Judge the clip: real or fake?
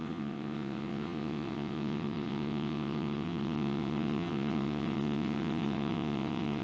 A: fake